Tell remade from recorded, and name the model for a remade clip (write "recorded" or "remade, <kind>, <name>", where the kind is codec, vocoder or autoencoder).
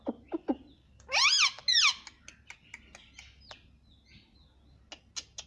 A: recorded